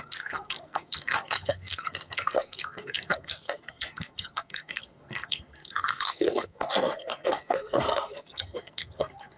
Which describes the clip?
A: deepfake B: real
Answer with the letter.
A